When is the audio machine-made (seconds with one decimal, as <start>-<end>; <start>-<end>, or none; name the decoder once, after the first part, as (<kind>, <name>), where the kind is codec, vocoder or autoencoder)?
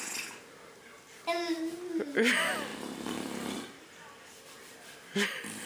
2.7-5.7 (vocoder, BigVGAN v2)